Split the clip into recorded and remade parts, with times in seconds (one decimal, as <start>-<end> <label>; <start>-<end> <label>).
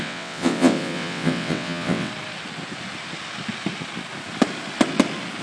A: 0.0-2.1 remade; 2.1-5.4 recorded